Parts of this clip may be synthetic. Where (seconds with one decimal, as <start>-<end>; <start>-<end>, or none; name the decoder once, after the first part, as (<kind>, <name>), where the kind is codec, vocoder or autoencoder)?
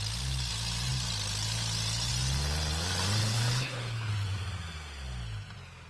3.2-4.1 (codec, HILCodec)